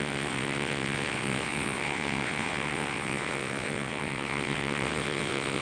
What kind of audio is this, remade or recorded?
remade